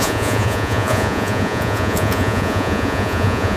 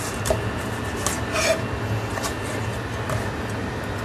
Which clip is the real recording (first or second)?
second